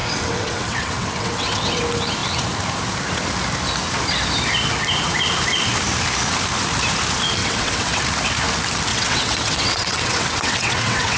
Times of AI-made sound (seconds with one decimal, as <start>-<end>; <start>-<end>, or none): 0.0-1.8; 7.4-8.0; 8.9-11.2

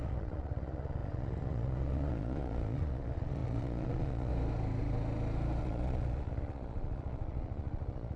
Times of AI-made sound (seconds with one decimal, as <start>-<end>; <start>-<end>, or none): 0.0-4.3; 5.6-8.2

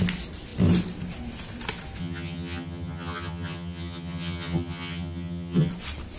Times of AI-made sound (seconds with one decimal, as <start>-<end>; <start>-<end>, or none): 2.0-5.7